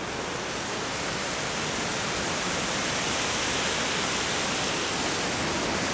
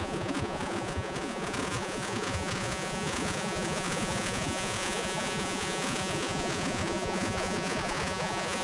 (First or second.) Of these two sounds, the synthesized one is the second